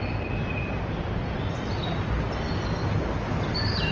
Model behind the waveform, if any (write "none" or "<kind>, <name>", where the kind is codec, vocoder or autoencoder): none